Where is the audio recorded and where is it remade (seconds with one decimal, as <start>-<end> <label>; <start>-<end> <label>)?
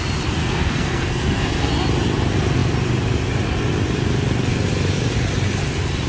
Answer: 0.0-0.4 recorded; 0.4-1.7 remade; 1.7-6.1 recorded